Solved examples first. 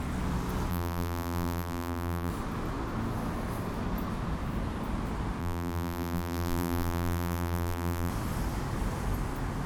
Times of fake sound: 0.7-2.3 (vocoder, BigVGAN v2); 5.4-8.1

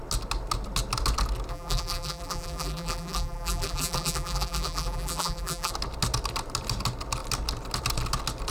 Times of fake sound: 1.5-5.7 (vocoder, BigVGAN v2)

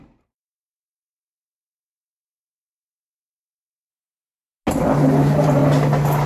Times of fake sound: 0.0-3.9 (vocoder, BigVGAN v2); 4.7-5.6

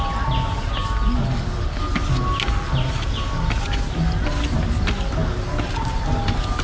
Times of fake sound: none

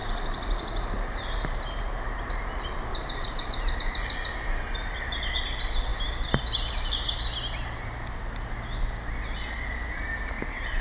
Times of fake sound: 0.0-1.8 (vocoder, BigVGAN v2); 2.9-3.8

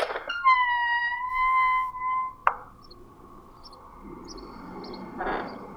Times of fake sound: 1.3-1.9 (vocoder, BigVGAN v2)

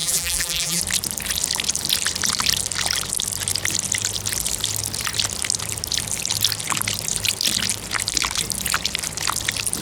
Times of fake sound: 0.0-0.8 (vocoder, BigVGAN v2)

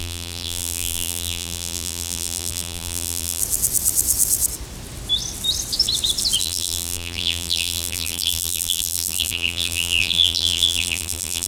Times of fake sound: 0.0-3.4 (vocoder, BigVGAN v2); 6.4-11.5